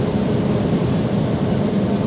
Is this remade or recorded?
recorded